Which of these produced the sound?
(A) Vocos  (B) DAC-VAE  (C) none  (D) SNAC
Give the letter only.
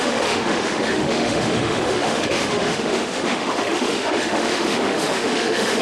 B